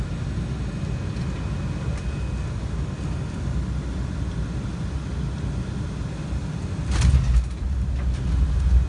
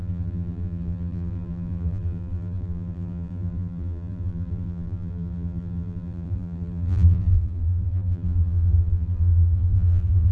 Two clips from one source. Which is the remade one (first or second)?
second